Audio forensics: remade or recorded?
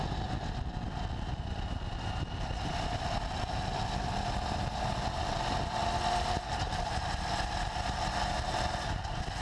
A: recorded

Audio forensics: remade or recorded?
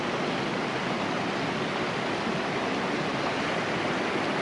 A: recorded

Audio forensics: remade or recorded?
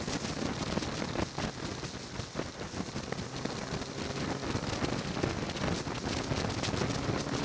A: recorded